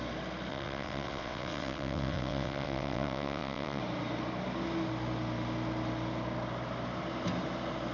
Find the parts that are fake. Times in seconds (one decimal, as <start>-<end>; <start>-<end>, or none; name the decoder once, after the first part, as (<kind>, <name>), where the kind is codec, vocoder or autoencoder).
0.5-3.8 (vocoder, WaveNeXt)